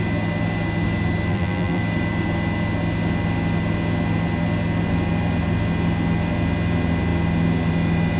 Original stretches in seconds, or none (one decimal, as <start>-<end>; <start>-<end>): 0.0-1.3; 1.8-8.2